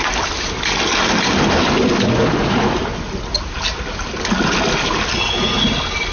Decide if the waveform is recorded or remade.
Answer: recorded